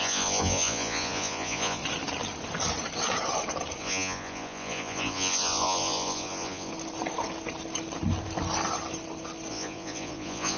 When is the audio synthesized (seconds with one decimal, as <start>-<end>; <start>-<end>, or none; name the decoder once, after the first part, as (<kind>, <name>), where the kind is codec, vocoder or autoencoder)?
0.0-1.8 (vocoder, Vocos); 3.8-6.7; 9.5-10.6